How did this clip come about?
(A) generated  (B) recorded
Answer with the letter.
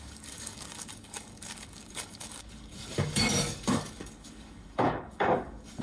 A